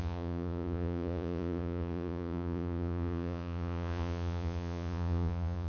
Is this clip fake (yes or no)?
yes